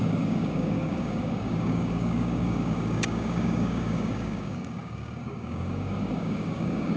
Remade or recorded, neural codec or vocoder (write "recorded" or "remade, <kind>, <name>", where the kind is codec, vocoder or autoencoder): remade, codec, DAC